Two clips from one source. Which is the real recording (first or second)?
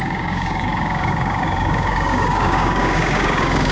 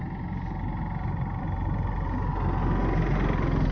second